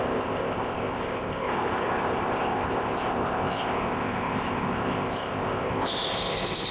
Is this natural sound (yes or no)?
no